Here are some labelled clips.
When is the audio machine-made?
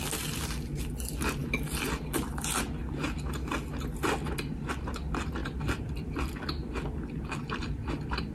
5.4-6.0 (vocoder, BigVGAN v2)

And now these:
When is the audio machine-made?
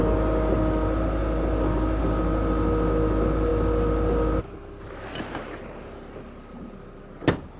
none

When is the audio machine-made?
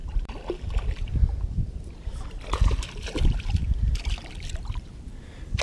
0.0-3.6 (vocoder, BigVGAN v2); 4.3-5.6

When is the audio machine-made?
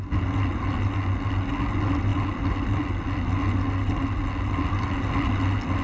2.1-2.8 (vocoder, BigVGAN v2)